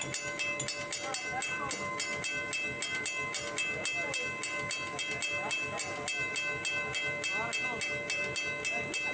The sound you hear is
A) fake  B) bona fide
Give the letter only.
B